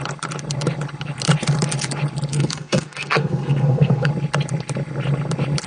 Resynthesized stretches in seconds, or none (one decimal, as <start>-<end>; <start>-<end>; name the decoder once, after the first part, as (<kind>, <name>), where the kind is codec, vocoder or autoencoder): 2.3-4.1 (codec, SNAC)